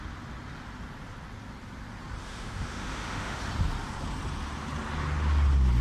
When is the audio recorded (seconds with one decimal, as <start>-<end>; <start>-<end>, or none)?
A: 0.0-2.2; 3.4-5.8